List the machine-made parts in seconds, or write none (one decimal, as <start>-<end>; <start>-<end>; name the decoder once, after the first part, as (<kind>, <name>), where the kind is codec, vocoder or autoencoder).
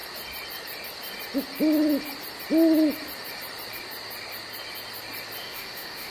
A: 5.4-6.1 (autoencoder, DAC-VAE)